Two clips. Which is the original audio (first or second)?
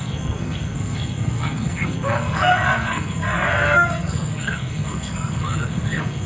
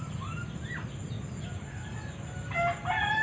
second